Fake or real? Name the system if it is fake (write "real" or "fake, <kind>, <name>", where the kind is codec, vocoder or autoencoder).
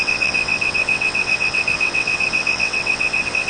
fake, vocoder, WaveNeXt